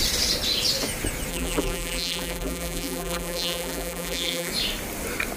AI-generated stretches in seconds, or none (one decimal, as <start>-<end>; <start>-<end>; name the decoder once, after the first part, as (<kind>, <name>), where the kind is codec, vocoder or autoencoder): 1.3-4.5 (vocoder, BigVGAN v2)